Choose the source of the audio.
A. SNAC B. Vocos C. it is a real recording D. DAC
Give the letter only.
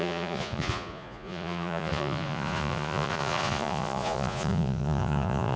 B